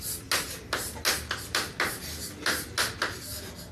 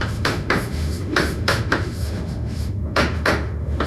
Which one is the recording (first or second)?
first